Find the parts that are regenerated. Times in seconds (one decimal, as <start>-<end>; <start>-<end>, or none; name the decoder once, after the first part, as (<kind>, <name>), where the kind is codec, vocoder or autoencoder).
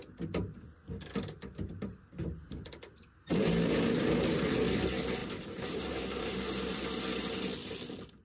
5.2-6.8 (vocoder, BigVGAN v2)